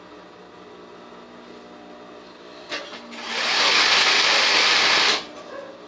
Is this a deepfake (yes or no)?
no